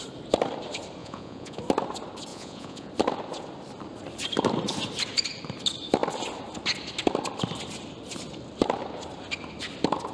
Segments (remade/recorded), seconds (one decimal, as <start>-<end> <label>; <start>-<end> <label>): 0.0-1.0 recorded; 1.0-1.6 remade; 1.6-2.3 recorded; 2.3-2.9 remade; 2.9-10.1 recorded